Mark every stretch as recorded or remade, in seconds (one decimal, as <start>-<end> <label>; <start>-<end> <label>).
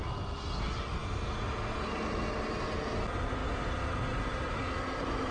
0.0-5.3 recorded